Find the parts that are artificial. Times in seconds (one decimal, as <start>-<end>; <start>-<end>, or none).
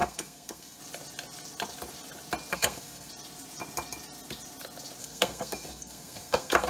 0.0-0.8; 2.5-3.1; 5.0-6.7